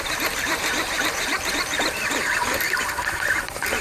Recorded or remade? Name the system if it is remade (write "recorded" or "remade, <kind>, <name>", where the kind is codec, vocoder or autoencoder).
remade, vocoder, BigVGAN v2